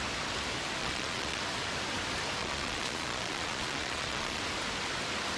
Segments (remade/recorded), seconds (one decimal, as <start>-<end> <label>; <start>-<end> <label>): 0.0-0.8 recorded; 0.8-1.4 remade; 1.4-2.4 recorded; 2.4-4.4 remade; 4.4-5.4 recorded